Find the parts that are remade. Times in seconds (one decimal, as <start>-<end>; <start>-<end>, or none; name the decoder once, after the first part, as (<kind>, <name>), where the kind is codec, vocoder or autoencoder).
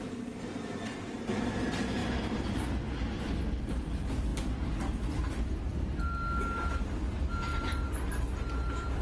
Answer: none